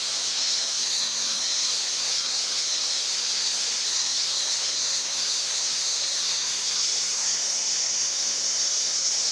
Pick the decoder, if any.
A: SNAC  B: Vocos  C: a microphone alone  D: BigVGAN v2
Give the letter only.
A